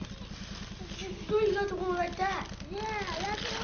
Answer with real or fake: real